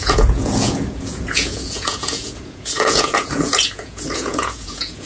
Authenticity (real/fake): fake